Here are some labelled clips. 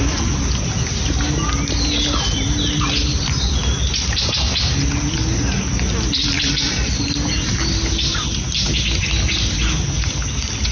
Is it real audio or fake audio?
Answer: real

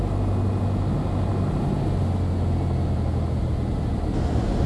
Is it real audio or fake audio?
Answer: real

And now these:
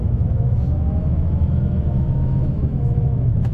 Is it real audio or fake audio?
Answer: fake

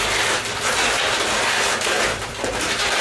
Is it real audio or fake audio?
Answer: real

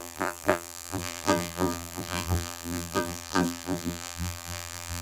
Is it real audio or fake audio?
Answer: fake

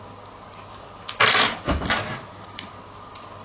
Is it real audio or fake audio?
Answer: real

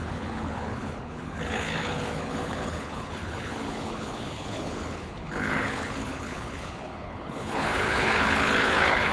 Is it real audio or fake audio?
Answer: fake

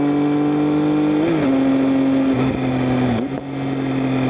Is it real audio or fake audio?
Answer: real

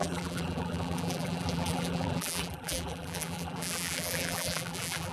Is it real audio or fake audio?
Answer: fake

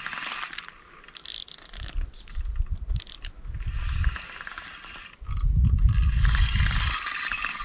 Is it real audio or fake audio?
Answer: real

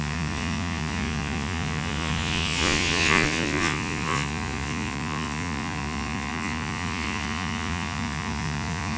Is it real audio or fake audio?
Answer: fake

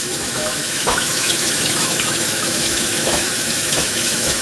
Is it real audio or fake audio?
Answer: fake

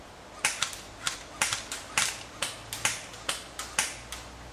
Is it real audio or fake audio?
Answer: real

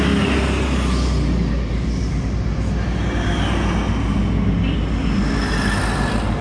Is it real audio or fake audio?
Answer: real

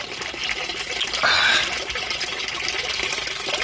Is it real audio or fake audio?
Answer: real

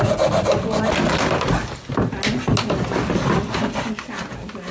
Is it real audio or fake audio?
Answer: real